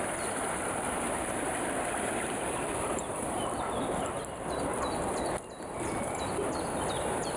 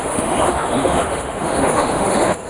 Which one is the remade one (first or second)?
second